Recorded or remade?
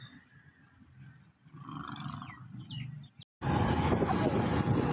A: recorded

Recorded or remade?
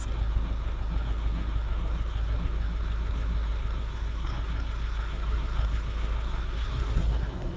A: remade